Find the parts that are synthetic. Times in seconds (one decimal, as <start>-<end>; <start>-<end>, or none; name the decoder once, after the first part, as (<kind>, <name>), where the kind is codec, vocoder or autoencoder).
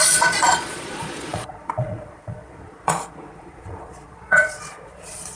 0.0-5.4 (vocoder, Vocos)